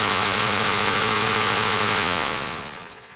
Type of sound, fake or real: fake